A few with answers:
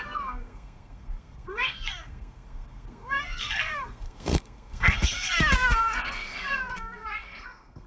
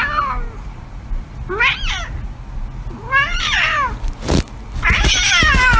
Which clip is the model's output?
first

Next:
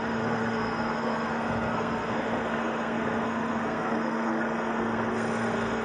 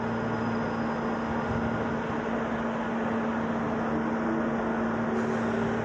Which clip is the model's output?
first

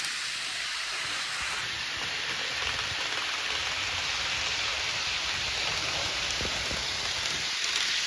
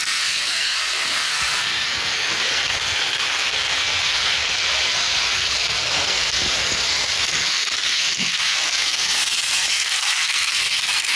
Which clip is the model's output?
second